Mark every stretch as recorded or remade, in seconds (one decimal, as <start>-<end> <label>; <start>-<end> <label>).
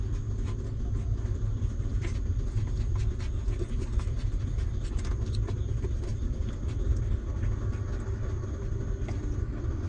0.0-9.9 recorded